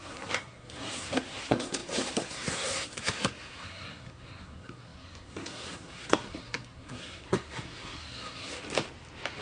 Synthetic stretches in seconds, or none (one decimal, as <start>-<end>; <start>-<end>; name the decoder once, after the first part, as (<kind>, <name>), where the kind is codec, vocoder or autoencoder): 0.0-8.6 (codec, SNAC)